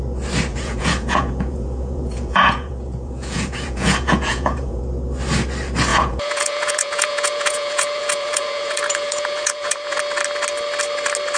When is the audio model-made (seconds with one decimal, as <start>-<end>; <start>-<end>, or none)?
0.5-4.8; 5.9-10.0